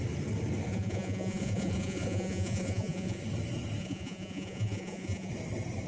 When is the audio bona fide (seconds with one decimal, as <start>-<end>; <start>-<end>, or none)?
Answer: 0.0-0.7; 3.2-3.8; 5.3-5.9